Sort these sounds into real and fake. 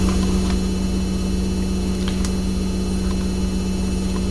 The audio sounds real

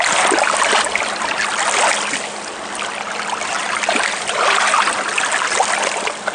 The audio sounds real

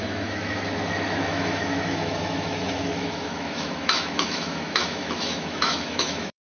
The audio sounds fake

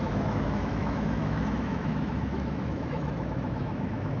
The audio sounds fake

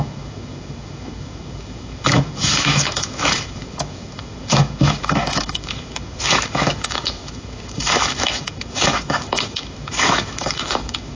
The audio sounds fake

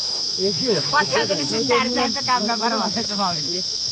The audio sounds fake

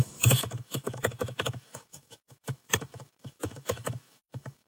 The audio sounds fake